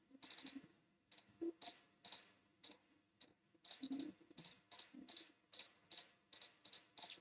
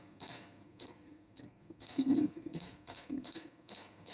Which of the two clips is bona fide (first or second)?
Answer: first